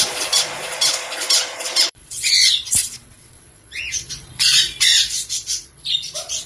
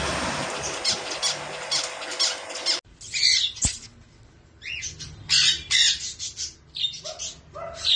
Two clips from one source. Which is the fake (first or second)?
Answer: first